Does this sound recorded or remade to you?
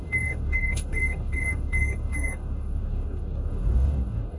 remade